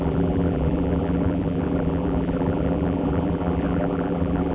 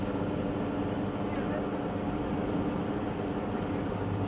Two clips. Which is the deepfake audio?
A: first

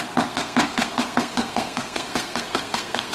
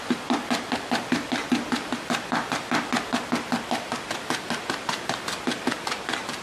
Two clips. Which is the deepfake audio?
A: first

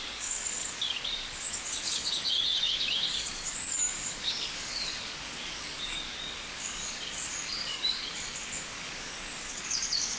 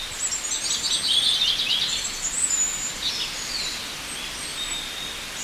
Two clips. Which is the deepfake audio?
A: first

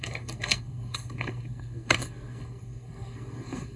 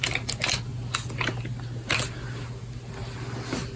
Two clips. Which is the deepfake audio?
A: first